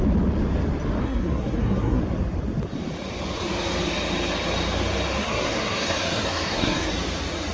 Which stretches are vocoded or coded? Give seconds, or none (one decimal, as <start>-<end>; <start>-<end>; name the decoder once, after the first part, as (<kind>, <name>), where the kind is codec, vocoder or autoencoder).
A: 1.0-2.0 (codec, SNAC); 5.2-6.9